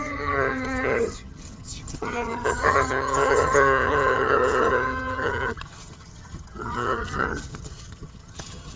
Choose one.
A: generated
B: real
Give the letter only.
A